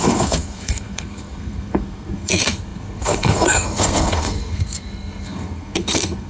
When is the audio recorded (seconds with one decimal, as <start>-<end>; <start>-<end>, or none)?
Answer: none